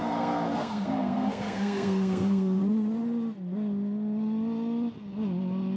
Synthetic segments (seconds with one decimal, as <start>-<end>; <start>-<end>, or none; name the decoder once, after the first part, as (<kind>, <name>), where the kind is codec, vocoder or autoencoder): 0.0-2.6 (codec, SNAC)